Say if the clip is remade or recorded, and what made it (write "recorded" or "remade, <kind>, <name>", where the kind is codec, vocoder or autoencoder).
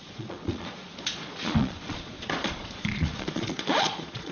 remade, vocoder, Vocos